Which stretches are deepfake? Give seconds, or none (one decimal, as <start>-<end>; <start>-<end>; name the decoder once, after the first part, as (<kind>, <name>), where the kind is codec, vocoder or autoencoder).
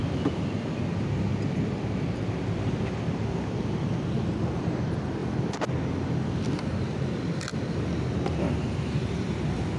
0.0-1.3 (vocoder, BigVGAN v2); 2.3-5.2; 6.9-7.5; 8.1-9.8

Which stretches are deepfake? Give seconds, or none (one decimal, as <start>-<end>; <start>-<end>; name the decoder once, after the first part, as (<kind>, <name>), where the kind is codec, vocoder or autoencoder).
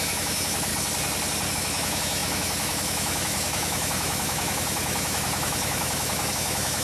0.0-0.7 (autoencoder, DAC-VAE); 1.5-6.8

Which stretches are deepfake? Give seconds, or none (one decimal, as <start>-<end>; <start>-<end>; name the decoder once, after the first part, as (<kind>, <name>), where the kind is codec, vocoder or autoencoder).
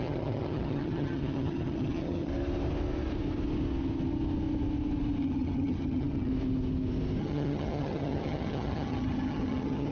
0.0-2.3 (vocoder, HiFi-GAN); 5.2-6.3; 7.2-9.9